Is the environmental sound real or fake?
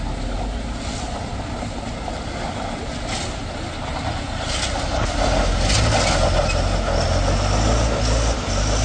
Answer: real